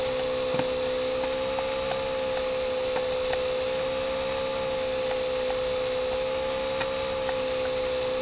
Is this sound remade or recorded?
recorded